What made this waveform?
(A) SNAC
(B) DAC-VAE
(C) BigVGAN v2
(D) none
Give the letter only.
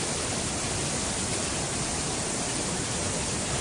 D